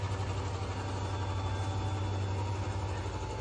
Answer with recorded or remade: recorded